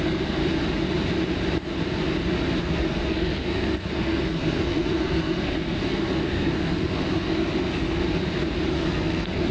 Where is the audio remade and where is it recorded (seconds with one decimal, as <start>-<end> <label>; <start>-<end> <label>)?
0.0-0.4 remade; 0.4-2.6 recorded; 2.6-8.0 remade; 8.0-8.7 recorded; 8.7-9.5 remade